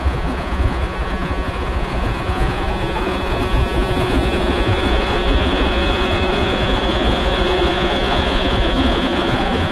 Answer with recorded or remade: remade